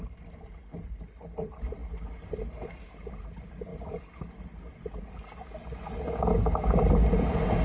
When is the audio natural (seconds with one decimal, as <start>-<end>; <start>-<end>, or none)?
0.0-7.6